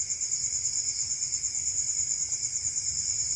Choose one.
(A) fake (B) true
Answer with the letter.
B